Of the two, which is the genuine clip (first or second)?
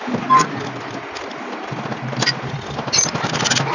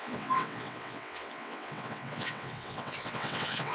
first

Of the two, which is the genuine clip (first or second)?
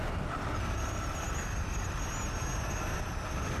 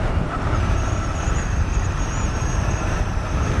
first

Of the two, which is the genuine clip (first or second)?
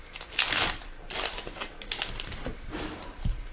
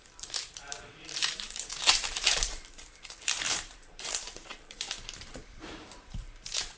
first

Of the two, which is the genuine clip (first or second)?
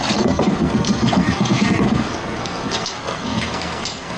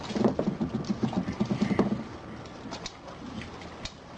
second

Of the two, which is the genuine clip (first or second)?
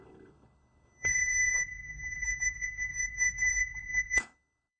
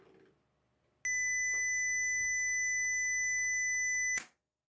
second